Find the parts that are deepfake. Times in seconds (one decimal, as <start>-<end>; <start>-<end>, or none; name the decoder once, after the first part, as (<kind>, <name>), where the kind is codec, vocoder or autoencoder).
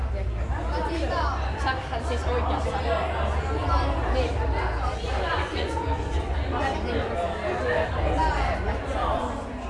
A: 5.3-6.2 (vocoder, Vocos)